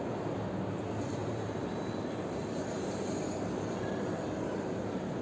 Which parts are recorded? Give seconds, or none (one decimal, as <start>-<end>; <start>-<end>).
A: 0.0-1.2; 4.3-5.2